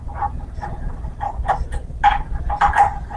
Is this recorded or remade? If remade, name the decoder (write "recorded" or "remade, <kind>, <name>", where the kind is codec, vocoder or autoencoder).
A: remade, vocoder, BigVGAN v2